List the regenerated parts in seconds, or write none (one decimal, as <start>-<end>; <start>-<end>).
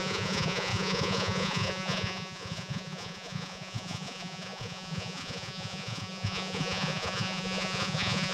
0.0-8.3